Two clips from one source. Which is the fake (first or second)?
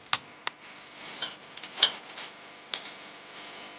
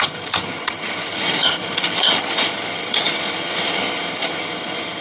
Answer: second